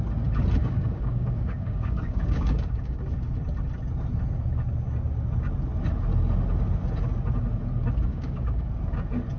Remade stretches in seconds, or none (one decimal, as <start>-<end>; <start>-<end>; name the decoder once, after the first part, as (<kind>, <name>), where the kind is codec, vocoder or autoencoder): 0.6-3.0 (codec, DAC); 8.1-8.7